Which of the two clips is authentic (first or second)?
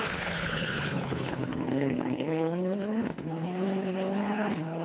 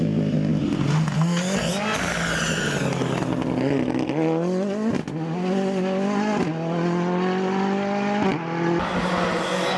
second